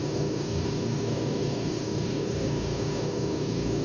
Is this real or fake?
fake